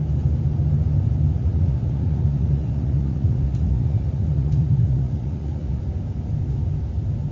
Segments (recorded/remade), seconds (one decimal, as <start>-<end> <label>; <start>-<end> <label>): 0.0-1.4 recorded; 1.4-5.8 remade; 5.8-7.3 recorded